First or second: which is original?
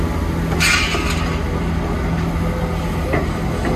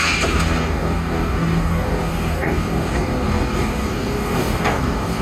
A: first